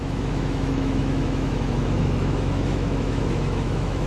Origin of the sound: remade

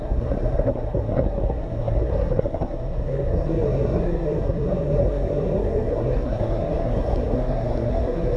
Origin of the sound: remade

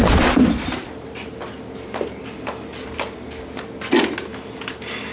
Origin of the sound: recorded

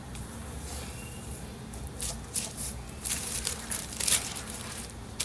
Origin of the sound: remade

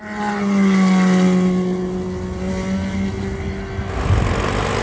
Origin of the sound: recorded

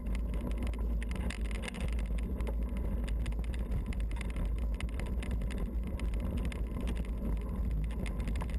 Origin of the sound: recorded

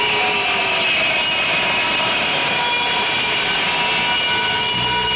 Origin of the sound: recorded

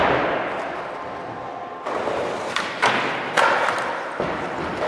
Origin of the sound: recorded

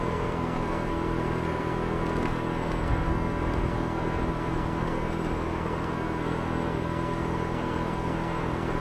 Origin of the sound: remade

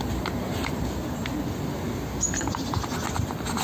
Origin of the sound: recorded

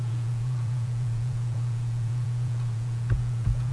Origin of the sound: remade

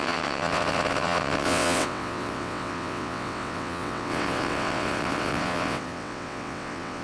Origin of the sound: remade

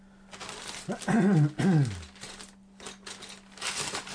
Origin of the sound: recorded